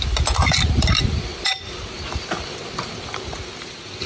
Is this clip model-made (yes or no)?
no